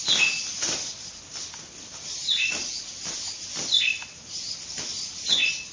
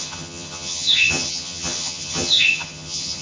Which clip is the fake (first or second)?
second